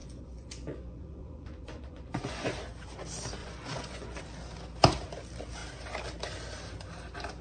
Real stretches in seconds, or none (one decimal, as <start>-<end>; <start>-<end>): 2.5-3.4; 4.2-7.4